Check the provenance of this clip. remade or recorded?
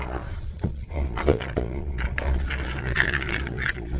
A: remade